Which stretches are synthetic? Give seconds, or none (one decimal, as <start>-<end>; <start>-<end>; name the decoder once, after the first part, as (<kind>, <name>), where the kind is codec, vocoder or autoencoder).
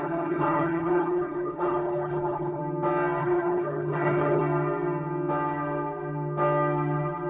0.0-2.6 (codec, HILCodec); 3.2-4.4